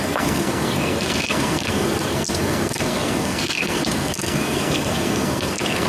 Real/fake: fake